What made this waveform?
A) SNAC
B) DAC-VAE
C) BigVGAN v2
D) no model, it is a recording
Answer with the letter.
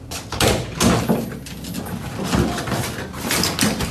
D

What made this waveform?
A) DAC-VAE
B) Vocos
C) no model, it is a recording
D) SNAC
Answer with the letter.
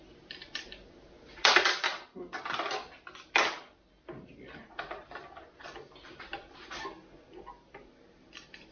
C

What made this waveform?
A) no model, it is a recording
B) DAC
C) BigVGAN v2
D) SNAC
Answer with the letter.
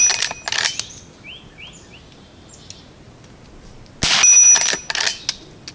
A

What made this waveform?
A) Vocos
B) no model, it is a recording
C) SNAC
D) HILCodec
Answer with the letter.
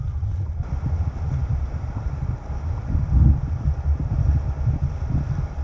B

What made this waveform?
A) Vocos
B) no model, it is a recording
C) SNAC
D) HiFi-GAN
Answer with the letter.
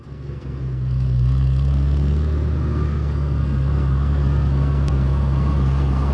C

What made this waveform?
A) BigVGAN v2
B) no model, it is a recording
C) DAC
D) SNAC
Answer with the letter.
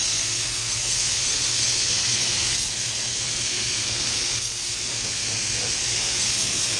D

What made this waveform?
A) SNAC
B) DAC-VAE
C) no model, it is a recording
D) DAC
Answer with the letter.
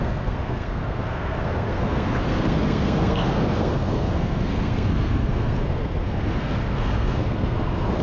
A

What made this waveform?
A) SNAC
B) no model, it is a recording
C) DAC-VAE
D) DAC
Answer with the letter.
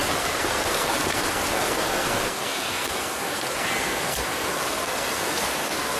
A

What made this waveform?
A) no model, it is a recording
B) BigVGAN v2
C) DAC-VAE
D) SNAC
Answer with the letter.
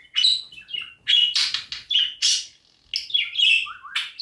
A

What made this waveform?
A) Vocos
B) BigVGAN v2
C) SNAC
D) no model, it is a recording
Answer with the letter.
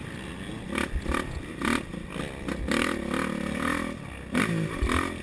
D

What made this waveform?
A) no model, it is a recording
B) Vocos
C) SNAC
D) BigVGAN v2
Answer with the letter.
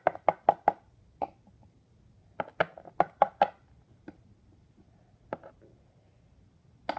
A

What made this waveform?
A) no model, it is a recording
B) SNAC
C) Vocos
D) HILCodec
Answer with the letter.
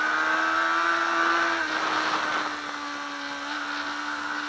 A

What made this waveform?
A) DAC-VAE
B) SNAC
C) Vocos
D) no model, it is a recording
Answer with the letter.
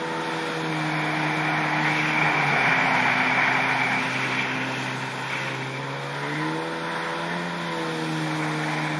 D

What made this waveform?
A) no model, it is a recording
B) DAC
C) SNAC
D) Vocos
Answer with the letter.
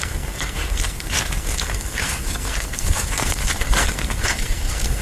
C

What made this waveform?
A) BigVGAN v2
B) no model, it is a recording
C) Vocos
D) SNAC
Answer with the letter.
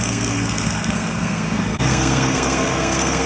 D